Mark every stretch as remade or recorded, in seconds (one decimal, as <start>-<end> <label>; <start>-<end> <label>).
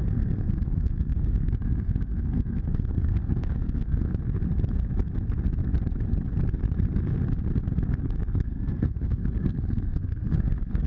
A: 0.0-4.1 remade; 4.1-8.0 recorded; 8.0-10.9 remade